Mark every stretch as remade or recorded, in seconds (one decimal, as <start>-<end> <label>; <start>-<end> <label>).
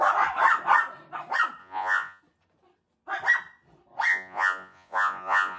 0.0-1.6 recorded; 1.6-2.2 remade; 2.2-4.1 recorded; 4.1-5.6 remade